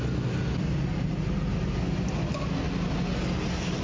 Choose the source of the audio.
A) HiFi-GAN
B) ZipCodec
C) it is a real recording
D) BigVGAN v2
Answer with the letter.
C